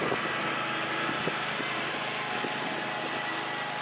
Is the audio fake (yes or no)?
no